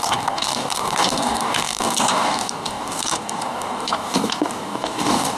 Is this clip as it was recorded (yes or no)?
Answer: no